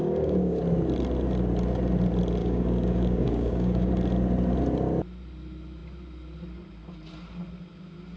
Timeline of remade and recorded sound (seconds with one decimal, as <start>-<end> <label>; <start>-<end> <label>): 0.0-0.6 remade; 0.6-2.4 recorded; 2.4-3.9 remade; 3.9-8.2 recorded